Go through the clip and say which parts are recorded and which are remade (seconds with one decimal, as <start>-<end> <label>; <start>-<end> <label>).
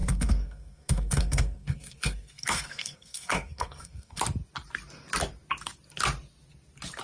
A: 0.0-4.2 remade; 4.2-7.0 recorded